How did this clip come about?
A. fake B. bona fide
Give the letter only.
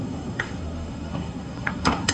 A